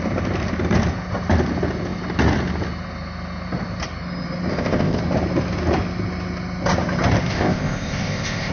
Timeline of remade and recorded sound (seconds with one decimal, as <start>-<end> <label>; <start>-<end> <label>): 0.0-4.5 recorded; 4.5-5.0 remade; 5.0-7.3 recorded; 7.3-8.5 remade